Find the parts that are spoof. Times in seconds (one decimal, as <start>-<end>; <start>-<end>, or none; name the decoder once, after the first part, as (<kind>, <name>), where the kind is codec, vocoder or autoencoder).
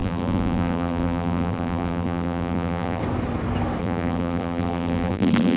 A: 0.0-3.0 (vocoder, BigVGAN v2); 3.8-5.6